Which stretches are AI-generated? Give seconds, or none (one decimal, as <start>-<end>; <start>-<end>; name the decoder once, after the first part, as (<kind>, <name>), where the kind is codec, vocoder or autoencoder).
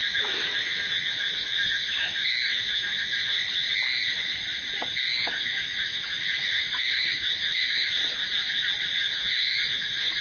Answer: 0.0-3.4 (autoencoder, DAC-VAE); 5.0-8.0; 9.0-10.2